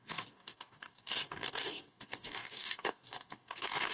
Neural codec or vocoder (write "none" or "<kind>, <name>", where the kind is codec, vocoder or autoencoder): codec, DAC